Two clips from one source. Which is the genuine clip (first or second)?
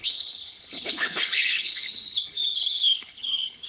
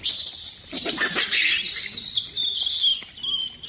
second